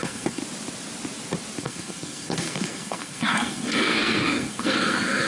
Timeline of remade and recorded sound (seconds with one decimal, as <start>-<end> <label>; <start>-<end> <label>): 0.0-0.4 remade; 0.4-1.6 recorded; 1.6-5.3 remade